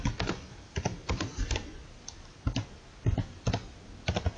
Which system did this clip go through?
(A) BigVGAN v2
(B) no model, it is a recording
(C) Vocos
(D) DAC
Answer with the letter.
B